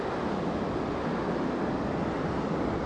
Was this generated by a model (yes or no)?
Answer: no